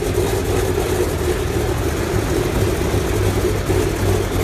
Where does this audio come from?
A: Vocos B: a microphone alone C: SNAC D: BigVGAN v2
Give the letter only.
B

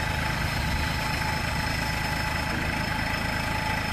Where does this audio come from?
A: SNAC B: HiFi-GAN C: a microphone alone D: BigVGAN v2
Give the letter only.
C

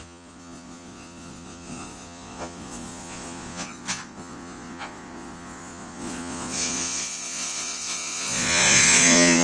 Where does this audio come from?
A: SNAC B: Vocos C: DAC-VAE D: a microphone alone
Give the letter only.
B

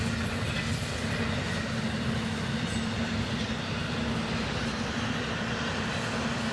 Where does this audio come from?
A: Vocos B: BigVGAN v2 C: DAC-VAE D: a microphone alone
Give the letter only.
D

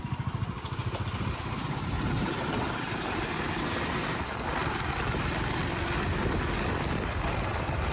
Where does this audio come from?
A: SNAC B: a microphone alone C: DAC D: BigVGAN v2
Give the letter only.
B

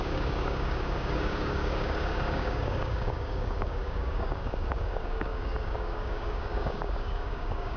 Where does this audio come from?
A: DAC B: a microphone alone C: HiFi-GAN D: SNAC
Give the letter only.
A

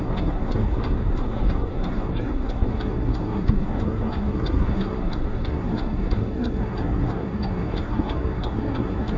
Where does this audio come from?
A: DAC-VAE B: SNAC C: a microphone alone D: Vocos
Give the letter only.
B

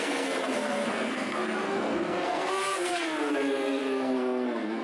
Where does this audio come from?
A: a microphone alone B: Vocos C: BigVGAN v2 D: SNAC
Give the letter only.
D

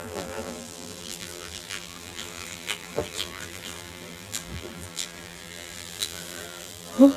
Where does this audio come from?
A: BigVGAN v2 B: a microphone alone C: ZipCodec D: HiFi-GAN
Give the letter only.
A